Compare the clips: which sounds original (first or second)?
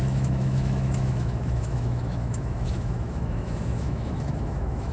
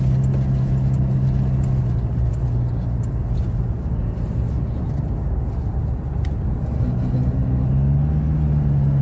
second